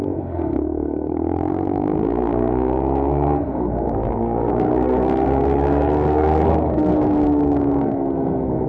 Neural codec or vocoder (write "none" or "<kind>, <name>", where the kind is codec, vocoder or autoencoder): codec, SNAC